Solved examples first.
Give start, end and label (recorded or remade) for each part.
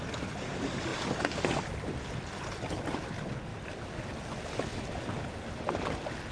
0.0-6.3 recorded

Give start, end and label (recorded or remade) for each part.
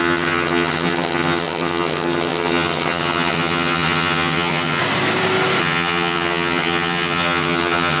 0.0-4.8 remade; 4.8-5.6 recorded; 5.6-8.0 remade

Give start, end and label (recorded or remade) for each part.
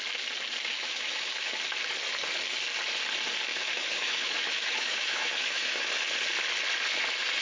0.0-0.7 recorded; 0.7-1.5 remade; 1.5-3.5 recorded; 3.5-5.9 remade; 5.9-7.4 recorded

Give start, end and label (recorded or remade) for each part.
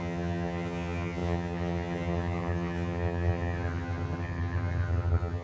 0.0-5.4 remade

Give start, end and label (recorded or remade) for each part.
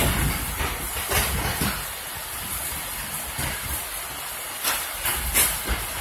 0.0-6.0 recorded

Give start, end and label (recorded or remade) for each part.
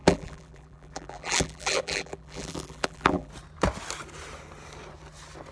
0.0-3.3 remade; 3.3-5.5 recorded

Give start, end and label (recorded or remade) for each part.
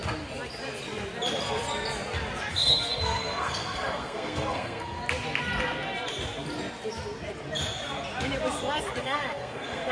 0.0-2.5 recorded; 2.5-5.0 remade; 5.0-9.0 recorded; 9.0-9.9 remade